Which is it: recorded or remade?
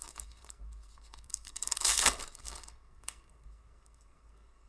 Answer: remade